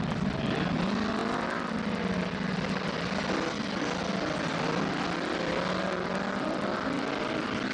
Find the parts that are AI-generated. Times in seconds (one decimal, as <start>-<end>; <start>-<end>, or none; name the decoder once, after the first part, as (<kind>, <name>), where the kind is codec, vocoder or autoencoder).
none